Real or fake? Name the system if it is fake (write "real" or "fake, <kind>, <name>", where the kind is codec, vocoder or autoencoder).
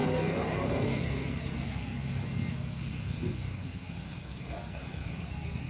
fake, codec, SNAC